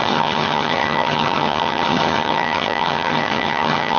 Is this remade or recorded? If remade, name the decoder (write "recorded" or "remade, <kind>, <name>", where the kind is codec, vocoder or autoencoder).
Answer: remade, vocoder, HiFi-GAN